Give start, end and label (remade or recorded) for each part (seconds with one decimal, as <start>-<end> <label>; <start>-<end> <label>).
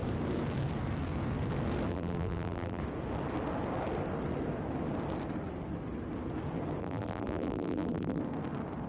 0.0-1.9 recorded; 1.9-2.8 remade; 2.8-6.8 recorded; 6.8-8.2 remade; 8.2-8.9 recorded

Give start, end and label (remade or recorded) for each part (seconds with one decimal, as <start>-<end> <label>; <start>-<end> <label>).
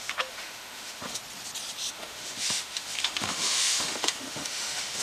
0.0-1.2 remade; 1.2-1.9 recorded; 1.9-5.0 remade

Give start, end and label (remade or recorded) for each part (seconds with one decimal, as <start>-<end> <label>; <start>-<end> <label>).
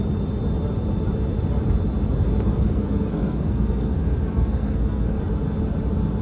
0.0-2.5 recorded; 2.5-5.2 remade; 5.2-6.2 recorded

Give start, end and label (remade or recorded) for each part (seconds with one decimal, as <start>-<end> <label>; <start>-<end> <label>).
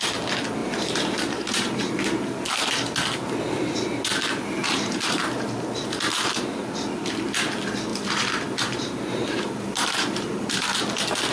0.0-0.6 recorded; 0.6-2.4 remade; 2.4-4.6 recorded; 4.6-5.2 remade; 5.2-7.9 recorded; 7.9-10.8 remade; 10.8-11.3 recorded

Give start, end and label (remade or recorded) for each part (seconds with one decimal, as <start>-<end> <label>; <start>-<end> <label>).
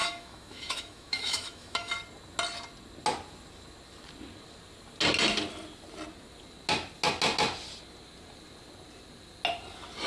0.0-1.9 remade; 1.9-10.1 recorded